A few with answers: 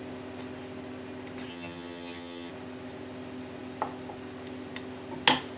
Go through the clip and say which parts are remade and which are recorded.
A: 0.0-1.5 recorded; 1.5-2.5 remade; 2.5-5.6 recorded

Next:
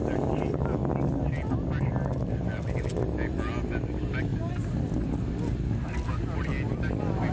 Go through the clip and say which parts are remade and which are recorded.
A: 0.0-7.3 recorded